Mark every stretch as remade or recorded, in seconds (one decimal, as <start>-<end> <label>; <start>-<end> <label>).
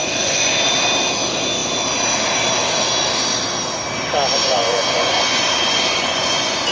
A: 0.0-0.5 remade; 0.5-4.4 recorded; 4.4-6.7 remade